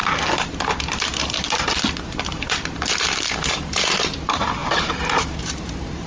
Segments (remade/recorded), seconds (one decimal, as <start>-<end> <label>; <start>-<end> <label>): 0.0-3.5 recorded; 3.5-6.1 remade